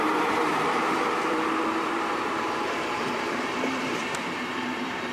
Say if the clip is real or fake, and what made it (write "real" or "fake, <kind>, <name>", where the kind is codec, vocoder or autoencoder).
fake, vocoder, BigVGAN v2